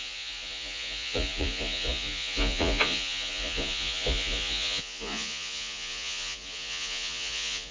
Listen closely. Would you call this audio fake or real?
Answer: fake